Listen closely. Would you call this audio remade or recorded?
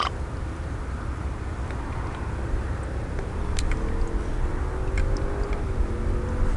recorded